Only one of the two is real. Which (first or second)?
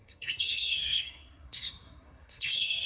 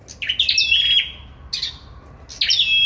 second